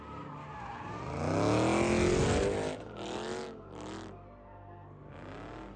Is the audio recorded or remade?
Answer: recorded